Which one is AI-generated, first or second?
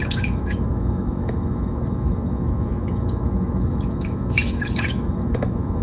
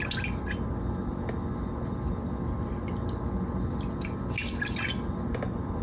first